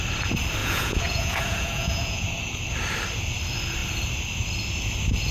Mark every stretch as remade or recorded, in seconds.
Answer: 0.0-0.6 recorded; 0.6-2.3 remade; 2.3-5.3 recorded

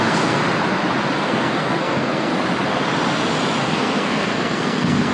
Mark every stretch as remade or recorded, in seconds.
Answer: 0.0-0.4 remade; 0.4-1.2 recorded; 1.2-2.3 remade; 2.3-3.6 recorded; 3.6-5.1 remade

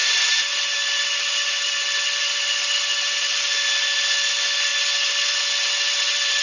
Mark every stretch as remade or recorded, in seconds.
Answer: 0.0-6.4 recorded

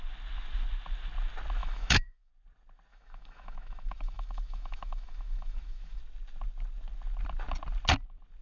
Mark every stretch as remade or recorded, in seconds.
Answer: 0.0-1.6 recorded; 1.6-2.3 remade; 2.3-2.9 recorded; 2.9-6.0 remade; 6.0-8.4 recorded

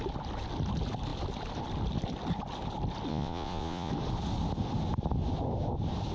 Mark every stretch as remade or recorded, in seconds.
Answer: 0.0-3.1 recorded; 3.1-3.9 remade; 3.9-6.1 recorded

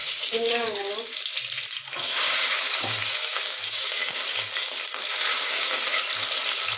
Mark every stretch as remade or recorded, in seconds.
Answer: 0.0-0.9 remade; 0.9-2.0 recorded; 2.0-6.0 remade; 6.0-6.8 recorded